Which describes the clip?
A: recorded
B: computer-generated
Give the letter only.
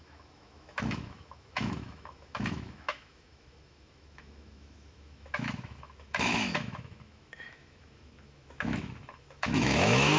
B